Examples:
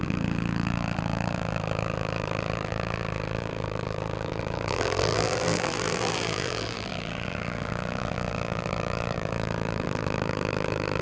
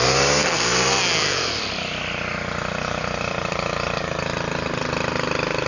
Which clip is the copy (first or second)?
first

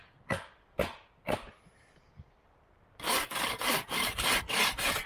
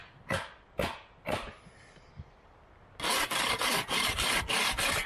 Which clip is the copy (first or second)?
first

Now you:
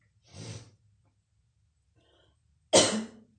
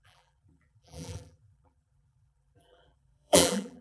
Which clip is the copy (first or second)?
second